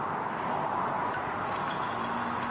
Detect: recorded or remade recorded